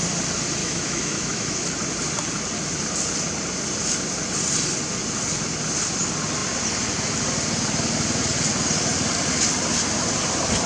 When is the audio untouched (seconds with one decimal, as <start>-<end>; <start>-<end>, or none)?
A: 0.0-0.6; 1.7-10.7